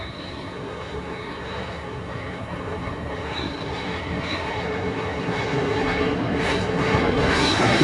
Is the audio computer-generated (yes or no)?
yes